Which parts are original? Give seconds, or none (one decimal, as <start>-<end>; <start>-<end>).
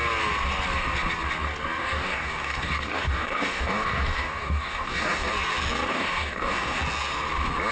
0.0-1.8; 5.3-5.9; 6.8-7.7